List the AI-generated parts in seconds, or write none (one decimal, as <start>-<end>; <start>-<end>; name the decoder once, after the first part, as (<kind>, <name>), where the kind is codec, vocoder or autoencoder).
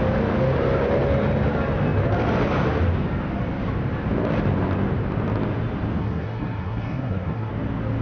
6.0-7.5 (codec, SNAC)